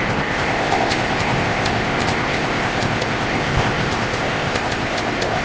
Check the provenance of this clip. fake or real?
fake